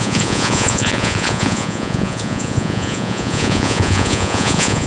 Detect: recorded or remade remade